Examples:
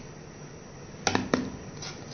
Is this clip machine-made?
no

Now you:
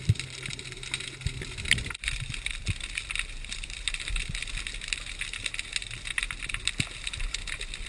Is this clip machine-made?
no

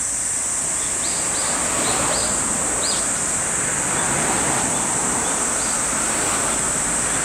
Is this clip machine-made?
no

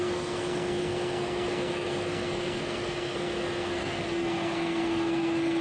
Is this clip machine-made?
yes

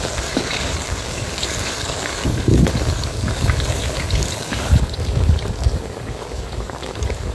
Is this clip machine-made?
yes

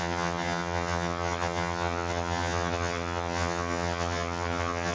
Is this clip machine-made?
yes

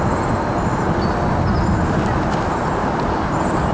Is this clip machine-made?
no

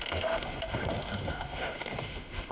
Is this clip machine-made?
yes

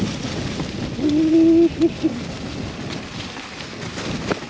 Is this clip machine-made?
no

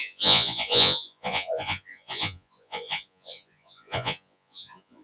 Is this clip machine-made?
yes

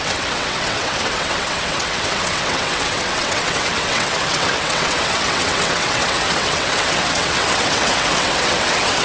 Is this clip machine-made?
yes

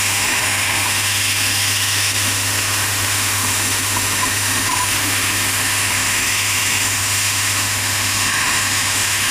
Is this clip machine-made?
yes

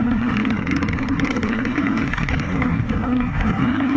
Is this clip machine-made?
yes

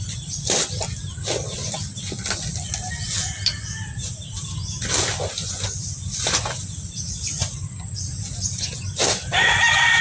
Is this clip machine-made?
no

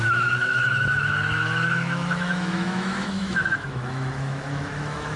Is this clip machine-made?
yes